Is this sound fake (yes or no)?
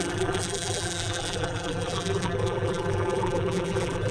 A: yes